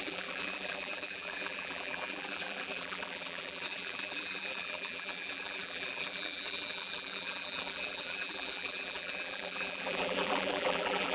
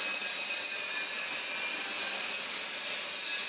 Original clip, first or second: second